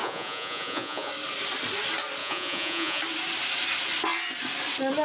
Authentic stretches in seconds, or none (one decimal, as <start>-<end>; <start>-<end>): 1.1-2.2; 3.0-5.0